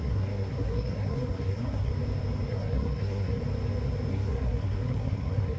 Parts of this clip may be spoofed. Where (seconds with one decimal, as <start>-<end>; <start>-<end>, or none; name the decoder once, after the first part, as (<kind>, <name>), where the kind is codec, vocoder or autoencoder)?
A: 0.0-1.9 (codec, SNAC); 2.5-3.4; 4.1-5.6